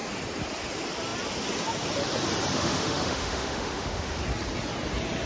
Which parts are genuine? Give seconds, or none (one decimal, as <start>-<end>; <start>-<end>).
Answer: 0.0-2.5; 4.2-5.3